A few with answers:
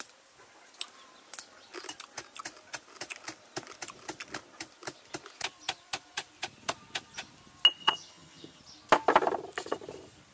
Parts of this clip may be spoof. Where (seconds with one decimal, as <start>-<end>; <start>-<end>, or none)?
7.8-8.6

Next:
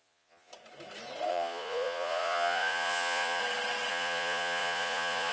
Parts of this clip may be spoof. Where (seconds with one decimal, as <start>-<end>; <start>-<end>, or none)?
0.0-0.5; 1.3-3.4; 3.9-5.3

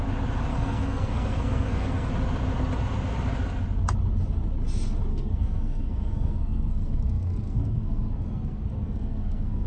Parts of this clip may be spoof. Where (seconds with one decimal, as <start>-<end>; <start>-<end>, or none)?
0.5-2.1; 5.1-9.7